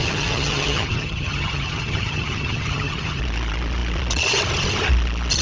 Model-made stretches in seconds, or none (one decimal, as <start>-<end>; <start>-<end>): 0.0-3.2